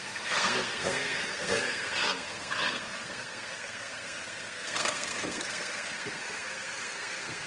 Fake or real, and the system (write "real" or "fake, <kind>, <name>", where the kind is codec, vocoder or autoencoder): fake, codec, SNAC